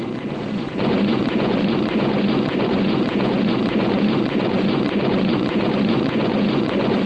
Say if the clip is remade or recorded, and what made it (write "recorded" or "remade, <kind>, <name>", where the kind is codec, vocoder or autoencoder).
remade, vocoder, Vocos